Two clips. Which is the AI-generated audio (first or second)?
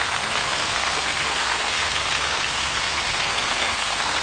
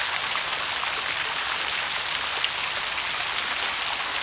first